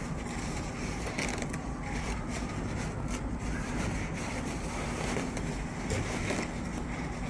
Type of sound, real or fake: real